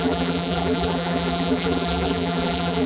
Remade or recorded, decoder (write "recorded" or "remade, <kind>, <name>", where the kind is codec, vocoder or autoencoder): remade, vocoder, BigVGAN v2